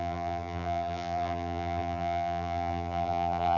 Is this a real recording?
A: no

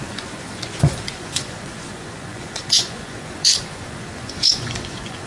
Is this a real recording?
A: no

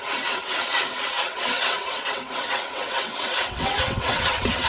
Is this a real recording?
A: no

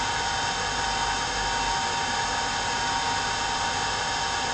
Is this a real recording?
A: yes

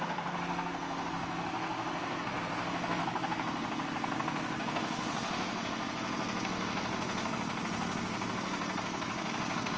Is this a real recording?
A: no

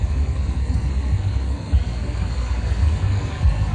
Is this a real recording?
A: no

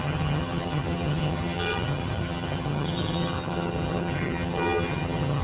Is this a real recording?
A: no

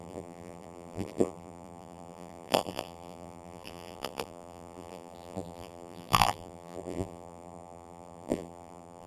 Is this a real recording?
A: no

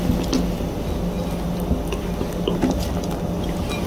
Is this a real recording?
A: yes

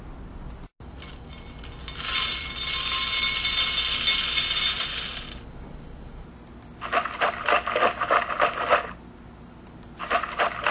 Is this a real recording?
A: yes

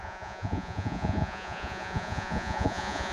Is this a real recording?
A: no